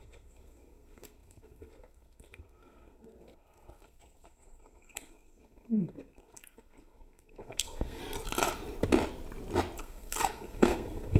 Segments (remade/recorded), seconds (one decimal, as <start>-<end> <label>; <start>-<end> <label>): 0.0-8.0 remade; 8.0-9.8 recorded; 9.8-11.2 remade